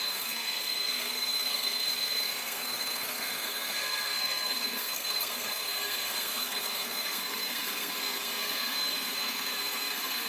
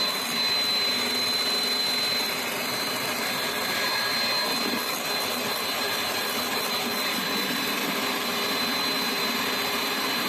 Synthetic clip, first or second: first